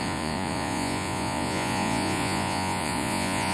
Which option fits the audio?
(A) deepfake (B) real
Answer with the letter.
A